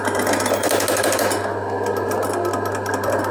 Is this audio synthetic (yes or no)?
no